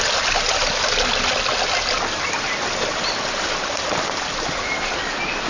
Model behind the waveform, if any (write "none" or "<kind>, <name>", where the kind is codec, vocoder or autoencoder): none